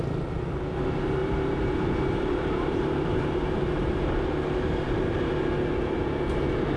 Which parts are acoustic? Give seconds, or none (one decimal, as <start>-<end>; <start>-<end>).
0.0-1.2; 5.3-6.8